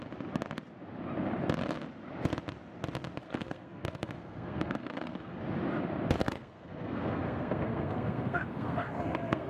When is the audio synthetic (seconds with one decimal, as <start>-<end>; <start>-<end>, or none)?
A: 3.2-5.4; 6.2-9.5